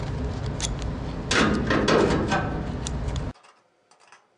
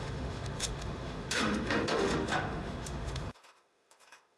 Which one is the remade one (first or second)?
second